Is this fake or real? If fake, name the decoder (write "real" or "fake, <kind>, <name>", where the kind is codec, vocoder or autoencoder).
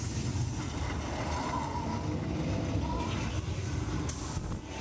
real